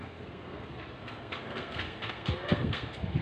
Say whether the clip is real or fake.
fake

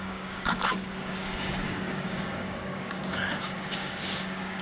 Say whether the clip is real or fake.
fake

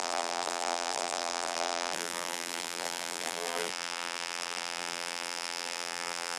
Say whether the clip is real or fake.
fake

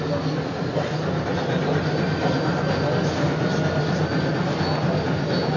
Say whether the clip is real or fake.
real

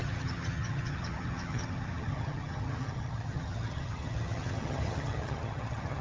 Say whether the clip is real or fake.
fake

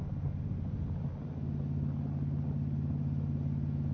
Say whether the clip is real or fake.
real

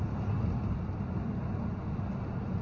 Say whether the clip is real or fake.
real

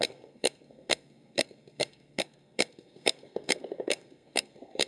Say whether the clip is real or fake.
fake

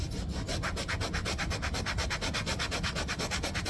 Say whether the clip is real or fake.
real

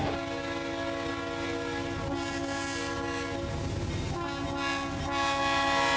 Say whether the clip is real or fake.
real